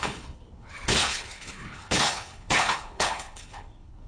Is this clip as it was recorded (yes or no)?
no